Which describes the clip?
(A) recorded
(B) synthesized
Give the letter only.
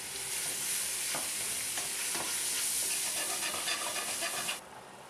A